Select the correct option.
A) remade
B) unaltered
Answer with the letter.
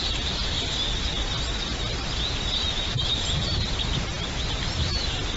B